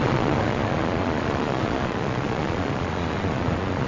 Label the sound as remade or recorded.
remade